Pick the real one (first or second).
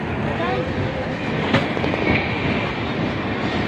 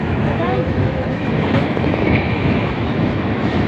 first